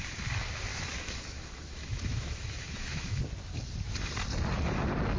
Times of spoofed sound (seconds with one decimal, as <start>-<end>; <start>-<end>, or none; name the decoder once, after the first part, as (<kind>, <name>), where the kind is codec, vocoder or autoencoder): 0.7-3.2 (autoencoder, DAC-VAE)